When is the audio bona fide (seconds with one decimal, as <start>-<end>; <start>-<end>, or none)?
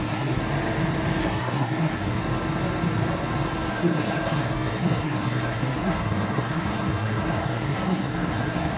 0.4-1.2; 2.2-3.7